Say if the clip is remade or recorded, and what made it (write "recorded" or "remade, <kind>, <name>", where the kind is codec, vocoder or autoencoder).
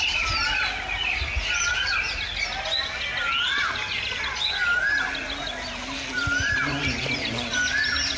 recorded